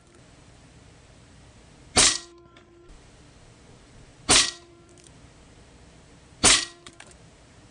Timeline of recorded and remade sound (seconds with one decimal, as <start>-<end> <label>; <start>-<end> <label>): 0.0-7.7 remade